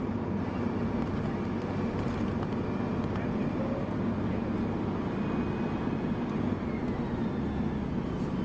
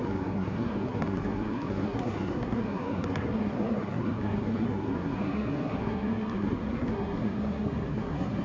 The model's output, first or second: second